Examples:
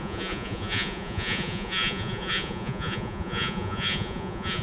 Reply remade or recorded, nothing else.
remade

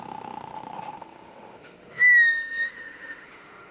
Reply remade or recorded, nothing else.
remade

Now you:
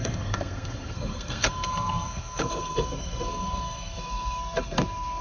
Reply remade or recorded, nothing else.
remade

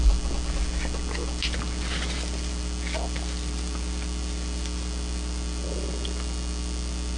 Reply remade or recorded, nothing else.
recorded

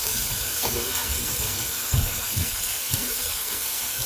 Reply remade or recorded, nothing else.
remade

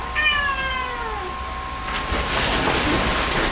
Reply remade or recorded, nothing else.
recorded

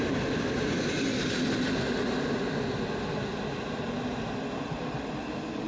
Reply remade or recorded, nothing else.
recorded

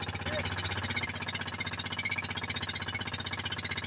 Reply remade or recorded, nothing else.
recorded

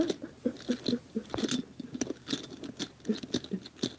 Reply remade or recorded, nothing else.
recorded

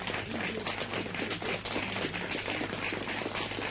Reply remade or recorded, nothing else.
recorded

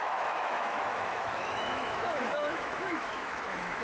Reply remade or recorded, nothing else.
remade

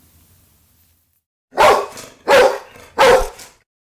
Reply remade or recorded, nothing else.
recorded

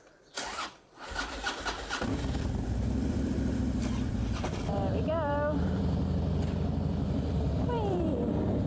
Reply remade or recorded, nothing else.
remade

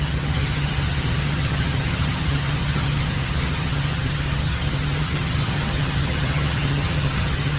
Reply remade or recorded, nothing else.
remade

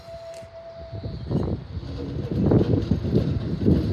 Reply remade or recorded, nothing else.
recorded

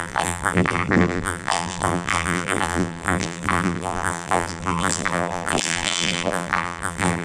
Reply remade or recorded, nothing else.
remade